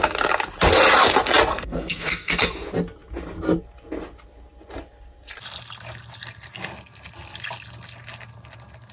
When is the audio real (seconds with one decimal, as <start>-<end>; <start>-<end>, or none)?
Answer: 0.0-1.5; 2.5-8.9